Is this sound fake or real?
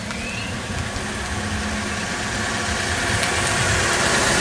real